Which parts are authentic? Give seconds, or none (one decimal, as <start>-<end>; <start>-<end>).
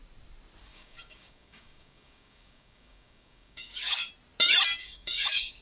0.0-0.7; 4.1-4.8